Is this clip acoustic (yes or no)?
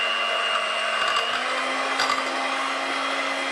yes